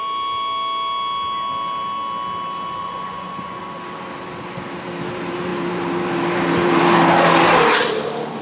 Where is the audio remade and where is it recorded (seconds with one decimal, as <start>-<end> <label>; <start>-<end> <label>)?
0.0-2.8 recorded; 2.8-3.6 remade; 3.6-8.4 recorded